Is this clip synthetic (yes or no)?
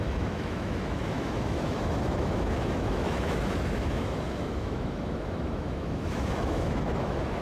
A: yes